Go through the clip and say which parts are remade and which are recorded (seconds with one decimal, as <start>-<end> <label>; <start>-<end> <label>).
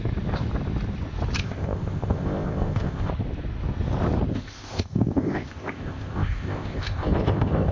0.0-1.4 recorded; 1.4-3.1 remade; 3.1-4.3 recorded; 4.3-7.7 remade